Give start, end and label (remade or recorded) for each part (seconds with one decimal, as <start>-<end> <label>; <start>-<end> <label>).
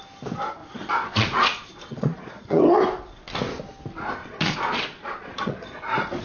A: 0.0-0.6 recorded; 0.6-2.6 remade; 2.6-4.2 recorded; 4.2-5.8 remade; 5.8-6.2 recorded